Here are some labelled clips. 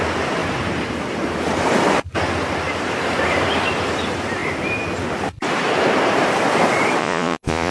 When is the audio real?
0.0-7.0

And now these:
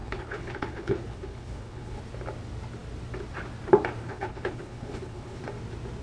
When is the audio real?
2.0-4.0; 5.4-6.0

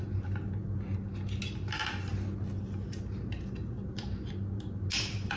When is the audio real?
0.0-5.4